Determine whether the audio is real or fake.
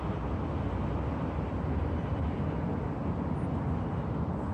real